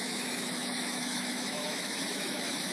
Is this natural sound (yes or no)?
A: no